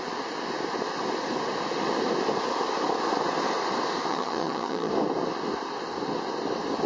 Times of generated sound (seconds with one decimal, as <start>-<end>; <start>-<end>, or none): 4.1-4.9